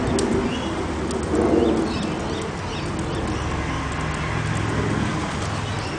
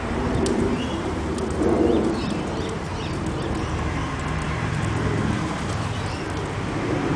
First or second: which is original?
first